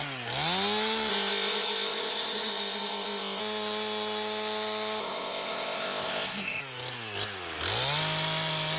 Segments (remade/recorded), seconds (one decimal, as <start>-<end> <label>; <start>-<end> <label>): 0.0-1.1 recorded; 1.1-3.4 remade; 3.4-5.0 recorded; 5.0-6.6 remade; 6.6-8.8 recorded